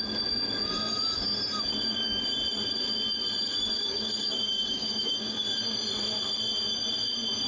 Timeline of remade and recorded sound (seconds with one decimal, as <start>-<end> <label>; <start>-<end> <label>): 0.0-3.4 recorded; 3.4-5.5 remade; 5.5-7.5 recorded